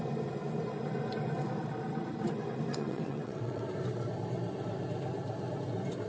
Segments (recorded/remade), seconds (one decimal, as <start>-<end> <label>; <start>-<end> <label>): 0.0-2.7 recorded; 2.7-3.6 remade; 3.6-6.1 recorded